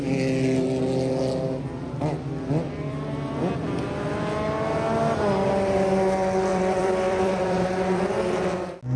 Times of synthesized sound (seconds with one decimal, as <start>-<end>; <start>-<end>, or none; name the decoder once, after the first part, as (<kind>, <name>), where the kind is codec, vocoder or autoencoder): 6.5-8.2 (vocoder, BigVGAN v2)